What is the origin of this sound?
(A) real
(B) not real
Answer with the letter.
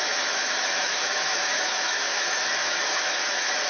B